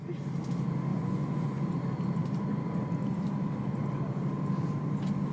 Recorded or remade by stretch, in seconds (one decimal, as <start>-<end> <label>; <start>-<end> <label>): 0.0-0.9 recorded; 0.9-1.7 remade; 1.7-5.3 recorded